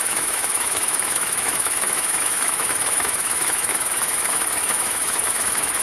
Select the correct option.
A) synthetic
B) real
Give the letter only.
A